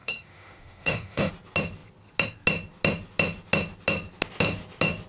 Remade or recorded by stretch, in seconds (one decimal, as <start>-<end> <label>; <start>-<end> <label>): 0.0-1.3 remade; 1.3-5.1 recorded